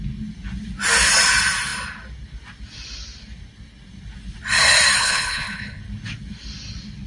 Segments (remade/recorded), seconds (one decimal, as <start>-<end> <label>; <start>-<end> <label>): 0.0-5.0 recorded; 5.0-5.8 remade; 5.8-7.1 recorded